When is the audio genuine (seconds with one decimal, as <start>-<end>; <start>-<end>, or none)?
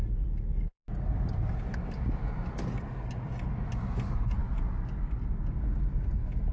0.0-6.5